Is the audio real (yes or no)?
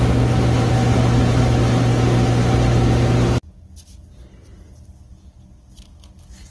yes